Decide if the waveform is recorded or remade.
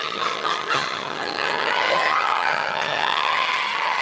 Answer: remade